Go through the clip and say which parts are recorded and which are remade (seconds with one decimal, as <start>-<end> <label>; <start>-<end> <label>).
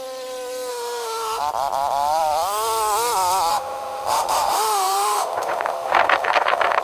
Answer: 0.0-0.7 recorded; 0.7-1.4 remade; 1.4-3.5 recorded; 3.5-6.8 remade